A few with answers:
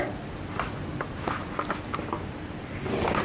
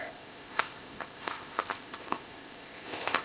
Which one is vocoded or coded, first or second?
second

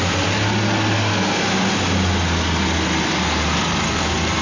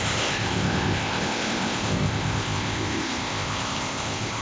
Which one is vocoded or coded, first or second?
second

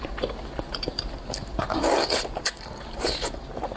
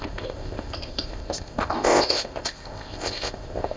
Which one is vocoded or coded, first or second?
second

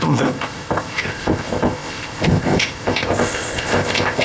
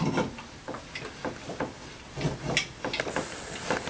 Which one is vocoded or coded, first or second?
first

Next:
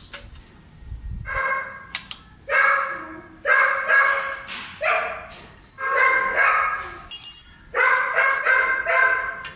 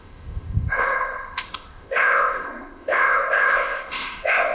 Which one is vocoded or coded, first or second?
second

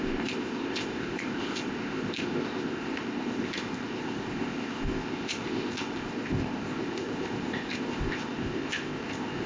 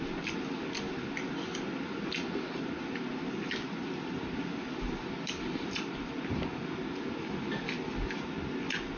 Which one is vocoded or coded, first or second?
first